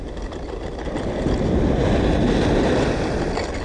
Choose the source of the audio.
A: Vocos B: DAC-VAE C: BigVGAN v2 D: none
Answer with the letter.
D